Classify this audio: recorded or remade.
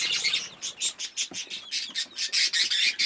recorded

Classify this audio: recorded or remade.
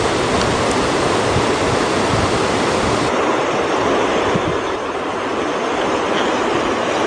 recorded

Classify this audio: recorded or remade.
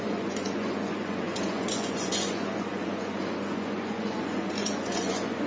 remade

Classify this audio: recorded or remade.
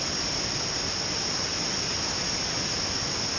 recorded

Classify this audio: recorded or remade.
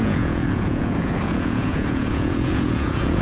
remade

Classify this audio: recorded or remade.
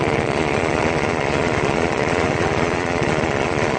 remade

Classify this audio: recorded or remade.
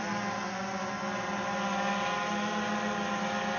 recorded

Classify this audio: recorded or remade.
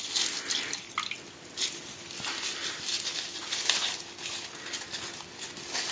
recorded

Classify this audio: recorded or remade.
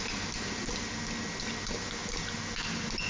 recorded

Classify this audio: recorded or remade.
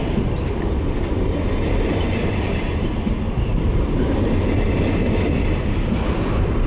recorded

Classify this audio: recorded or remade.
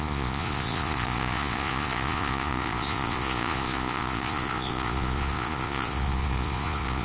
remade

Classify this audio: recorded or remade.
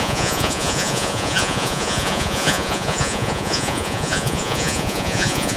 remade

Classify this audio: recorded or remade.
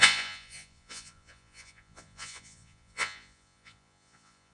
remade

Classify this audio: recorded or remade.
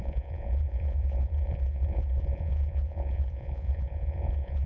remade